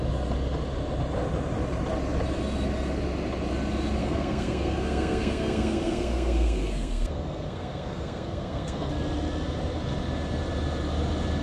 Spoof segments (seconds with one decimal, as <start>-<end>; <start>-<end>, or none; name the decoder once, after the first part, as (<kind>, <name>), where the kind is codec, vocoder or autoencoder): 4.0-8.9 (codec, SNAC)